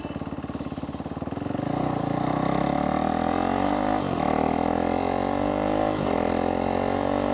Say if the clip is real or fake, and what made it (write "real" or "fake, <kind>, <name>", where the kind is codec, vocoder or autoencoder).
real